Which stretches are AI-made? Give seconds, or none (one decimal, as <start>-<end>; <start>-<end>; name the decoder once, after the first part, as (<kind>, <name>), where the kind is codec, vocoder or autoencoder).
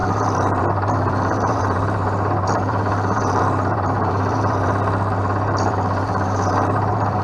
0.0-4.7 (vocoder, BigVGAN v2); 5.2-7.2